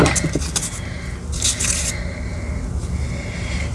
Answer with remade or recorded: recorded